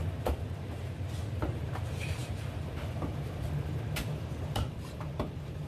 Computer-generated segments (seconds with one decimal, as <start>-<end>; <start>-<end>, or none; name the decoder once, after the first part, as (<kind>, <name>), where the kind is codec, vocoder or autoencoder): 0.0-5.7 (vocoder, BigVGAN v2)